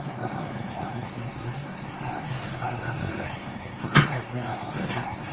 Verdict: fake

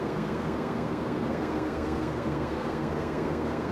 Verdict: fake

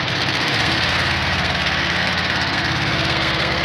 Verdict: fake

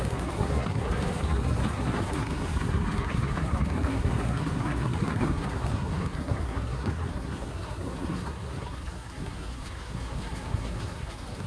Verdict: fake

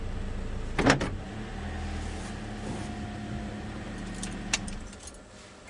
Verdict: real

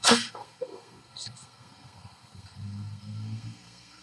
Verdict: fake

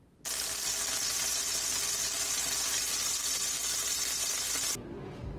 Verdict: real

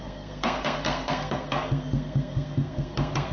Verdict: fake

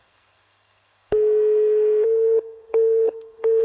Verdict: fake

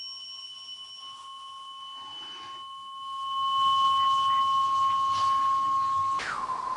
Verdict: real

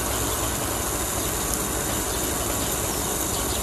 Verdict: real